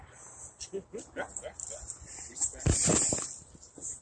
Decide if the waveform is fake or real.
real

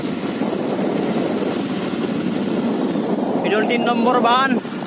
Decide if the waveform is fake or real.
real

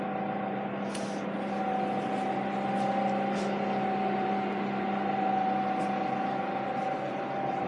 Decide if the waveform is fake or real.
real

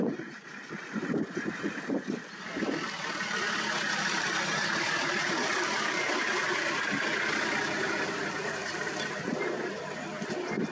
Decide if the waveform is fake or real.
real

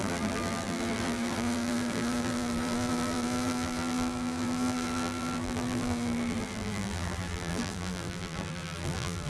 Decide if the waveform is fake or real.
fake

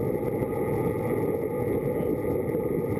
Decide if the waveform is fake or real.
real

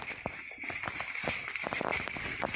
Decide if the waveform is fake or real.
fake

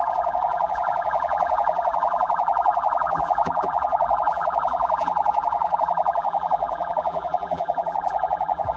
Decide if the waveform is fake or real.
fake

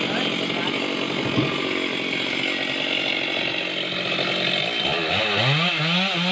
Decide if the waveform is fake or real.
real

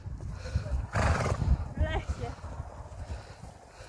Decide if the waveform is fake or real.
real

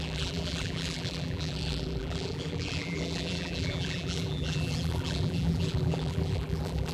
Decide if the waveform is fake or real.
fake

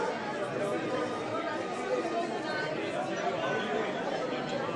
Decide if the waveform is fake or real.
real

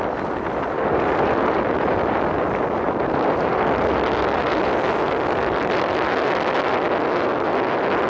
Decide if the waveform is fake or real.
fake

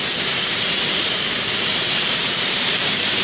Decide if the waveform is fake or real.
fake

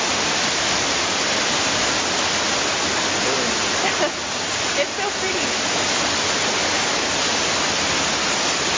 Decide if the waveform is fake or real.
fake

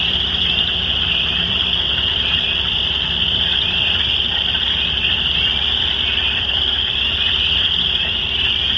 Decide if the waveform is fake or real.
fake